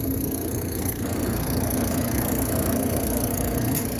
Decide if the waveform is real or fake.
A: fake